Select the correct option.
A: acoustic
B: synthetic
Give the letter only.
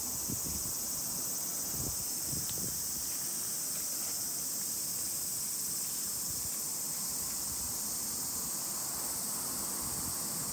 A